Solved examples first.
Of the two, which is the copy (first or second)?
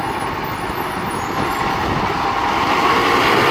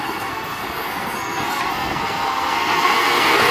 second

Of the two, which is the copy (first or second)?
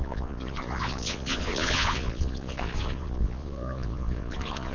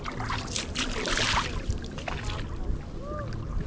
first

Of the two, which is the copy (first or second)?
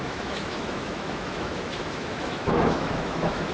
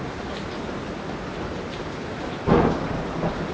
first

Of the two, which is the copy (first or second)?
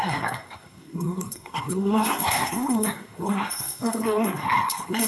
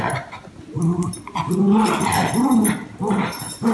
first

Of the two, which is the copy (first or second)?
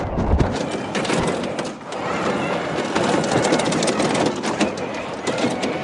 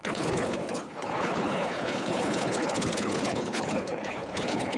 second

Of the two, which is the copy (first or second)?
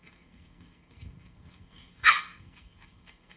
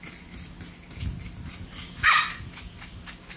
first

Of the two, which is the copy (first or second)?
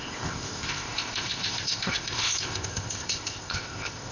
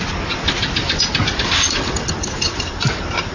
first